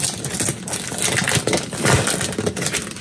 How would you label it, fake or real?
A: real